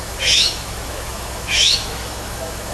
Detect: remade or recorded remade